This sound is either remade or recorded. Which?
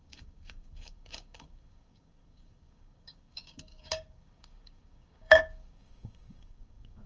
remade